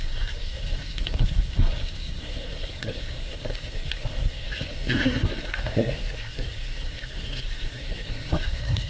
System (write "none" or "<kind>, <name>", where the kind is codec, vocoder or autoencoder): codec, SNAC